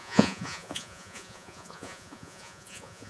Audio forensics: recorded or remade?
remade